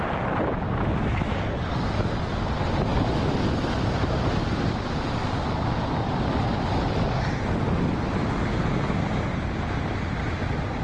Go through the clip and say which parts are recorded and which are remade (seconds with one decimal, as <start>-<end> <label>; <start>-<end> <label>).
0.0-10.8 recorded